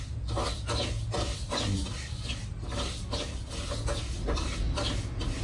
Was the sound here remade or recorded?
recorded